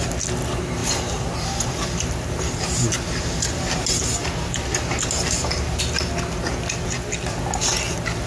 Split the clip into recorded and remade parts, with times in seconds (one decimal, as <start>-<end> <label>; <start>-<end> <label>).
0.0-0.8 recorded; 0.8-5.8 remade; 5.8-8.3 recorded